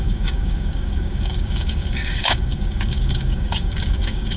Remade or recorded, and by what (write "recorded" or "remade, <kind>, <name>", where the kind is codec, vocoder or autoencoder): remade, codec, DAC